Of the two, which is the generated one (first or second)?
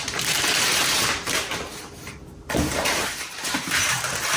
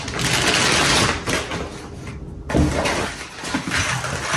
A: first